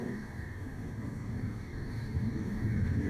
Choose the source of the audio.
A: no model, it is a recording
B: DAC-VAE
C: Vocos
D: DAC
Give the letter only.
D